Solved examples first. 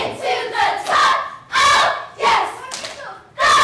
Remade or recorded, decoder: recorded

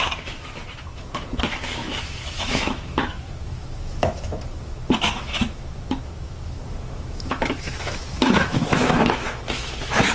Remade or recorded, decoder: remade, autoencoder, DAC-VAE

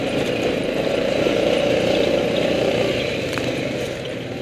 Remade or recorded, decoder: remade, vocoder, BigVGAN v2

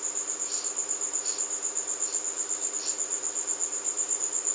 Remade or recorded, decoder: recorded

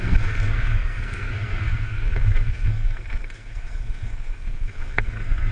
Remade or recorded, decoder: remade, codec, SNAC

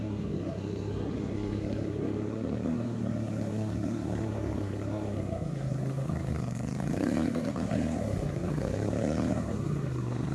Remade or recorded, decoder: remade, codec, SNAC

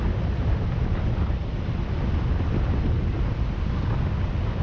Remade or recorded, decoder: recorded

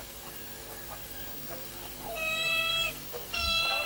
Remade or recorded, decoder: remade, codec, SNAC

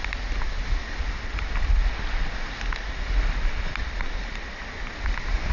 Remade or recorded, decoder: recorded